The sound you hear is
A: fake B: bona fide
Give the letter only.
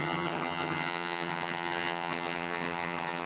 A